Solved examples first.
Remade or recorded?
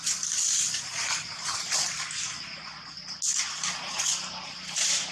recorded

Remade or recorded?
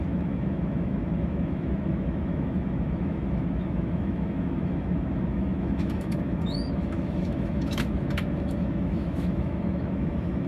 remade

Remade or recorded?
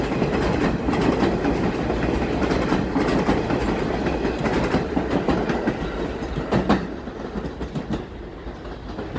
recorded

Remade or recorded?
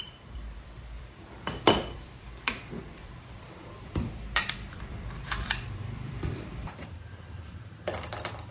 remade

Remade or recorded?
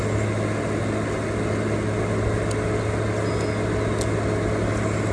recorded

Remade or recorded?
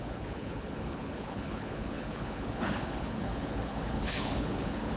remade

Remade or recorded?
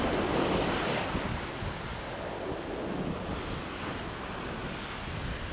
recorded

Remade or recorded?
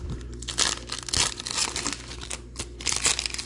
recorded